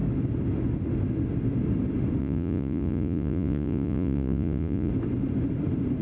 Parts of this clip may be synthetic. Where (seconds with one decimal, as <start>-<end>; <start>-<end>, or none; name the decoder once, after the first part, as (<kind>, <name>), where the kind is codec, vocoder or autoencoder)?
2.2-4.9 (vocoder, Vocos)